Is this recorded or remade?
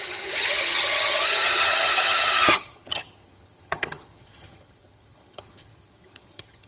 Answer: remade